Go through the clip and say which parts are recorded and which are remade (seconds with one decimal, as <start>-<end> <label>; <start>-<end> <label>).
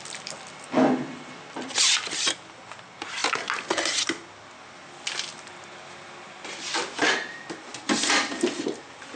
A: 0.0-9.2 recorded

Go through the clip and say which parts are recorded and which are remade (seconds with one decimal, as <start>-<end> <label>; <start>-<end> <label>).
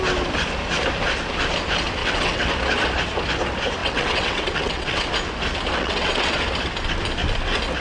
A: 0.0-2.0 recorded; 2.0-2.5 remade; 2.5-3.8 recorded; 3.8-5.1 remade; 5.1-5.7 recorded; 5.7-6.4 remade; 6.4-7.8 recorded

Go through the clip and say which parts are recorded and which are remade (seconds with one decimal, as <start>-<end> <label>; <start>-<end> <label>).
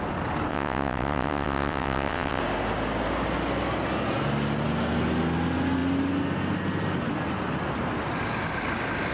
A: 0.0-0.5 recorded; 0.5-2.4 remade; 2.4-9.1 recorded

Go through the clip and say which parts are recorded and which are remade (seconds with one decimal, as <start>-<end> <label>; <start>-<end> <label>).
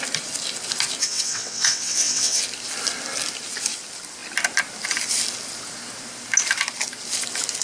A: 0.0-1.0 recorded; 1.0-2.4 remade; 2.4-7.6 recorded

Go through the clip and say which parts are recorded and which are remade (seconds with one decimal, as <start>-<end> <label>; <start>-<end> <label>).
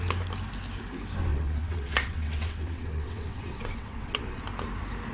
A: 0.0-1.3 recorded; 1.3-4.4 remade; 4.4-5.1 recorded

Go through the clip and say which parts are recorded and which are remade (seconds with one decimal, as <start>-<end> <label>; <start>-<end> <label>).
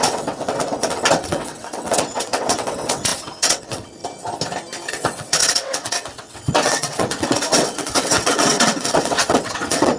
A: 0.0-4.0 remade; 4.0-4.9 recorded; 4.9-10.0 remade